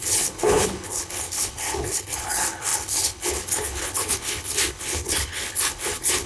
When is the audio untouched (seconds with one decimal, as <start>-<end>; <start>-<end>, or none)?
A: none